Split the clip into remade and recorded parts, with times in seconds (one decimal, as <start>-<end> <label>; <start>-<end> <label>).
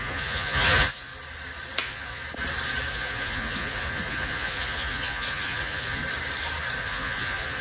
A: 0.0-1.1 remade; 1.1-1.8 recorded; 1.8-2.2 remade; 2.2-2.9 recorded; 2.9-6.0 remade; 6.0-6.8 recorded; 6.8-7.6 remade